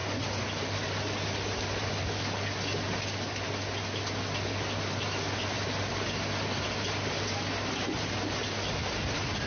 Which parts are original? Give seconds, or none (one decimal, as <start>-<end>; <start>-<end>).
0.0-9.5